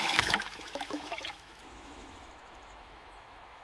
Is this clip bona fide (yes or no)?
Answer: no